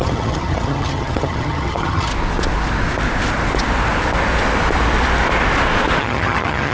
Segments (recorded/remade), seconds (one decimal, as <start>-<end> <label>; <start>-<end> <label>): 0.0-2.1 remade; 2.1-6.0 recorded; 6.0-6.7 remade